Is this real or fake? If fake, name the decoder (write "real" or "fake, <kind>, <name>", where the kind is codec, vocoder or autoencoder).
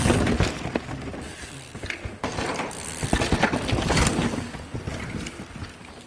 real